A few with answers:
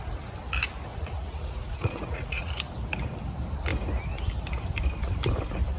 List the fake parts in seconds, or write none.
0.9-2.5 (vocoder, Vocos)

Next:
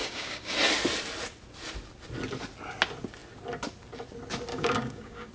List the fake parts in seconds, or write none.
0.0-0.5 (codec, DAC); 4.5-5.3

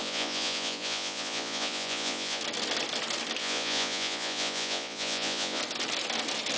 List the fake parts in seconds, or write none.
0.0-2.4 (vocoder, Vocos); 3.4-5.6

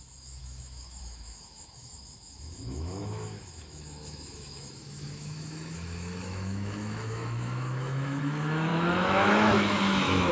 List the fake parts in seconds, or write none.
0.0-10.3 (autoencoder, DAC-VAE)

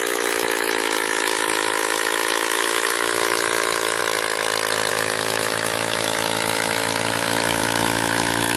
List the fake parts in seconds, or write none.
0.0-4.0 (autoencoder, DAC-VAE); 4.9-8.6

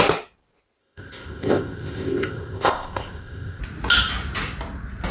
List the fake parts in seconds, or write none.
0.8-3.6 (codec, ZipCodec)

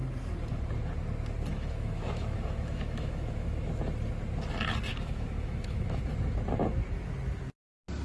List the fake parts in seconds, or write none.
1.5-3.7 (autoencoder, DAC-VAE); 4.9-6.0